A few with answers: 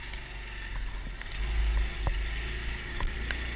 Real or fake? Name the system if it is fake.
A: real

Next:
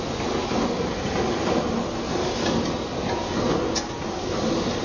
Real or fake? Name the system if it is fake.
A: real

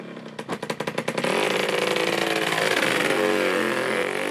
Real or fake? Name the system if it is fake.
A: real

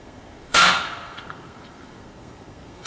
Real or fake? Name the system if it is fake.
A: fake, codec, SNAC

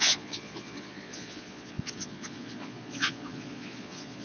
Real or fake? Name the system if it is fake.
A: fake, vocoder, Vocos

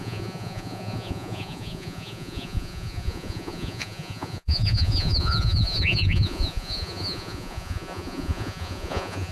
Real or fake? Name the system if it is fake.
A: fake, vocoder, Vocos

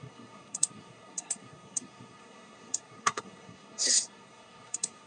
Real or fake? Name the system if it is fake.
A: fake, codec, SNAC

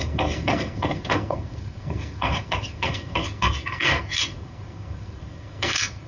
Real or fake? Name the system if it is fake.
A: fake, codec, SNAC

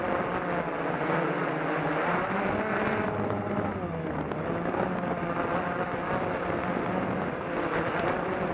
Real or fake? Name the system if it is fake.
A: real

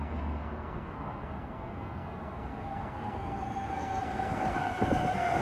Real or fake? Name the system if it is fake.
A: fake, codec, SNAC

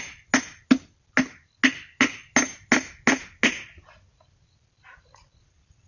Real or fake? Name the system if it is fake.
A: real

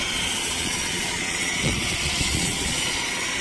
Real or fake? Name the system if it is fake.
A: fake, vocoder, Vocos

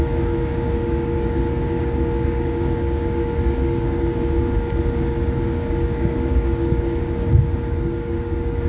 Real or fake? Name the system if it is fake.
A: fake, codec, DAC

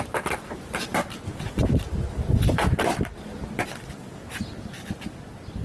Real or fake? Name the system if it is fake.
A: real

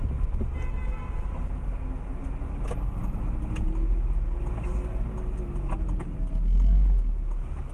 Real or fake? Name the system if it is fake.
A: real